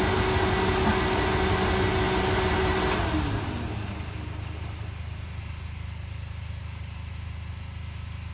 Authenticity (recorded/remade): recorded